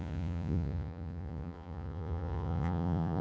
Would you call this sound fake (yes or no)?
yes